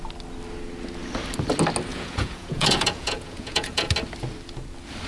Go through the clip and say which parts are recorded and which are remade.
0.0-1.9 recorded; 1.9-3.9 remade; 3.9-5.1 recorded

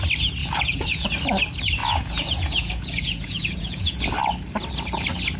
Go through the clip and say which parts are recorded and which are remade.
0.0-0.4 recorded; 0.4-1.1 remade; 1.1-1.8 recorded; 1.8-4.0 remade; 4.0-5.4 recorded